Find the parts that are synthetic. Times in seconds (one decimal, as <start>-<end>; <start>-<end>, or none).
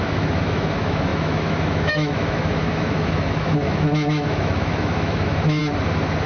0.0-5.6